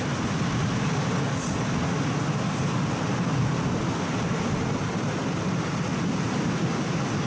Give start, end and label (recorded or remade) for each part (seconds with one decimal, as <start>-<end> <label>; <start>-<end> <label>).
0.0-5.9 recorded; 5.9-6.5 remade; 6.5-7.3 recorded